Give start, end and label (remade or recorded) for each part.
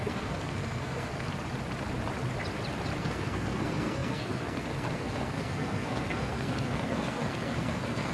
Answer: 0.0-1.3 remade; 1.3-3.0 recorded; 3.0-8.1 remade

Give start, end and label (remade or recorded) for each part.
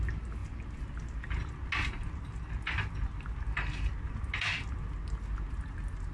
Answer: 0.0-6.1 recorded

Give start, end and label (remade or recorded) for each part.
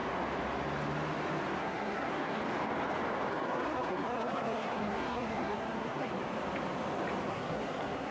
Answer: 0.0-1.6 recorded; 1.6-2.4 remade; 2.4-3.3 recorded; 3.3-6.1 remade; 6.1-7.3 recorded; 7.3-8.1 remade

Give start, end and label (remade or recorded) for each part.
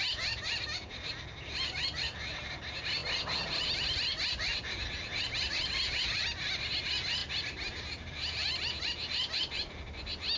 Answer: 0.0-10.4 recorded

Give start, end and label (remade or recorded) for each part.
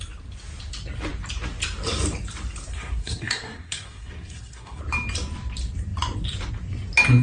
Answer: 0.0-2.7 recorded; 2.7-4.8 remade; 4.8-7.2 recorded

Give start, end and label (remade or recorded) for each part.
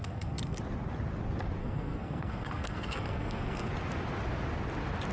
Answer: 0.0-0.6 remade; 0.6-1.6 recorded; 1.6-3.7 remade; 3.7-5.1 recorded